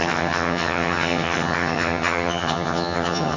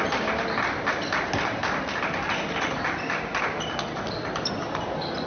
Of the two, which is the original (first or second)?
second